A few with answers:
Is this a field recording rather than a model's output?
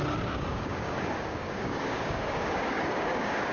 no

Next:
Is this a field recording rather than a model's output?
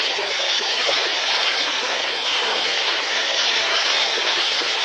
no